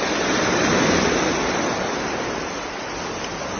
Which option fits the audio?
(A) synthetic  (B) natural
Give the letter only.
A